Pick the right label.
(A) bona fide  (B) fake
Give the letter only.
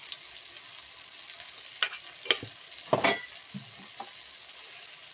A